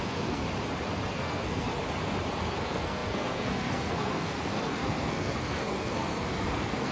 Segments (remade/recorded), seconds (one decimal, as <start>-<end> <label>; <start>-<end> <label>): 0.0-0.4 remade; 0.4-1.1 recorded; 1.1-1.8 remade; 1.8-2.5 recorded; 2.5-6.9 remade